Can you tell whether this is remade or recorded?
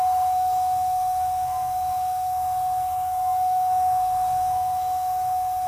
remade